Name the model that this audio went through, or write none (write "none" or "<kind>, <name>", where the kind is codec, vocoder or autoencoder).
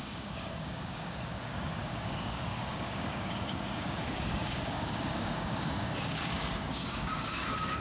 codec, DAC